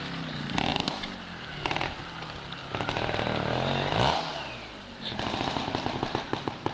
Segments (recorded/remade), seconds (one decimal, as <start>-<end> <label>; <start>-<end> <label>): 0.0-0.7 recorded; 0.7-2.0 remade; 2.0-2.6 recorded; 2.6-6.2 remade; 6.2-6.7 recorded